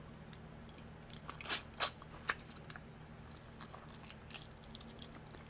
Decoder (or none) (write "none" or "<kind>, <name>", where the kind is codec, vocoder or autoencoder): none